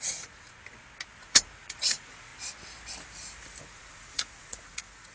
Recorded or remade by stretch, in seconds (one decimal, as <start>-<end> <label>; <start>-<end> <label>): 0.0-0.6 remade; 0.6-1.2 recorded; 1.2-2.3 remade; 2.3-3.6 recorded; 3.6-5.1 remade